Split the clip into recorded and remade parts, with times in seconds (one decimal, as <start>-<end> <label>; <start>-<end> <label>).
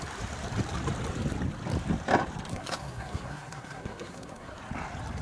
0.0-2.5 recorded; 2.5-4.6 remade; 4.6-5.2 recorded